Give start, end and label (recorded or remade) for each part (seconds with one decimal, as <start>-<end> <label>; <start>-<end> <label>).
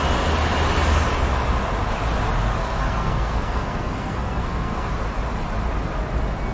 0.0-2.6 recorded; 2.6-4.9 remade; 4.9-6.5 recorded